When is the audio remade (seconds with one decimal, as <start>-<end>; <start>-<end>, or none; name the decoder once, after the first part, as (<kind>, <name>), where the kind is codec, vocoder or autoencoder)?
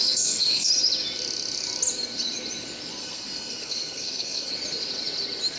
0.0-0.7 (codec, SNAC); 3.0-4.5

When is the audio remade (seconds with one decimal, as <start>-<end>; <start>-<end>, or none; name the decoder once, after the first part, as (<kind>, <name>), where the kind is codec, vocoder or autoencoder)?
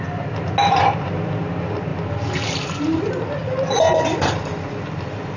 none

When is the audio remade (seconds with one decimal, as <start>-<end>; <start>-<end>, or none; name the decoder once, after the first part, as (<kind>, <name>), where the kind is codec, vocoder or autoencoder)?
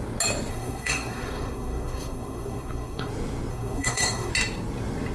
0.5-3.1 (codec, SNAC); 3.5-4.3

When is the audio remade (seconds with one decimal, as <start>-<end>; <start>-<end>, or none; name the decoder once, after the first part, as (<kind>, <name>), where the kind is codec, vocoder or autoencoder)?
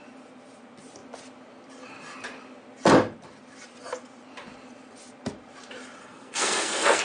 6.0-7.0 (codec, SNAC)